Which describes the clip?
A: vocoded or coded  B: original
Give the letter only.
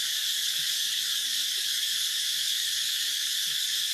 A